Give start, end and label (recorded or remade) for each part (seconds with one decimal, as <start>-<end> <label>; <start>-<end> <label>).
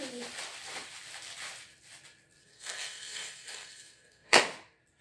0.0-2.4 recorded; 2.4-4.4 remade; 4.4-5.0 recorded